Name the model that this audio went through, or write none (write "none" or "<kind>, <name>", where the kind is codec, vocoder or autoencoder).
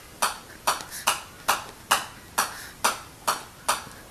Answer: none